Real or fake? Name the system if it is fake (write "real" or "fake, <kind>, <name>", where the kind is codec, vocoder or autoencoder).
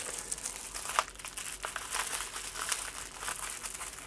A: real